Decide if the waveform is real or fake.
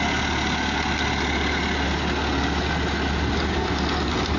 real